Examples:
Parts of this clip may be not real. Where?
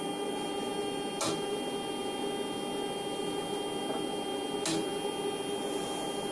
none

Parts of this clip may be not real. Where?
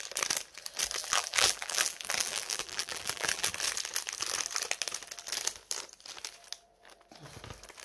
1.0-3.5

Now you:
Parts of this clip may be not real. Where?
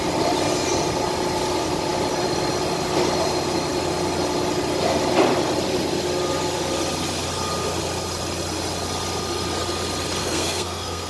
10.2-11.1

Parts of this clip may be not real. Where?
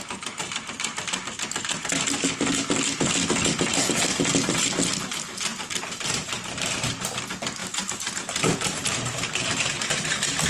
5.5-7.0; 7.6-10.5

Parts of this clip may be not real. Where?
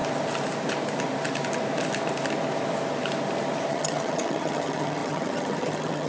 3.7-6.1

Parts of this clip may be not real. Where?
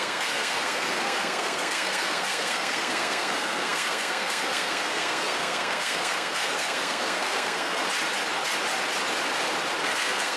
0.0-7.8; 9.8-10.4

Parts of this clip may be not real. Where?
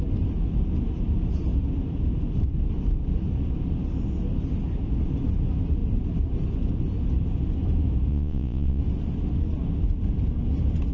8.1-8.8